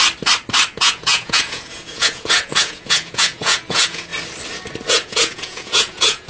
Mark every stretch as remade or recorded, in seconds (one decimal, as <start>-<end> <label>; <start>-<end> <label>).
0.0-0.7 recorded; 0.7-4.1 remade; 4.1-4.9 recorded; 4.9-6.3 remade